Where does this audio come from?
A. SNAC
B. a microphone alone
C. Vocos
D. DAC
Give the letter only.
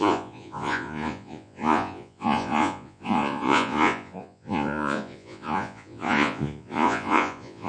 C